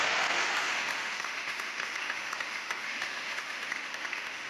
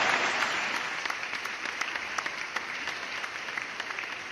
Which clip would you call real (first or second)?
second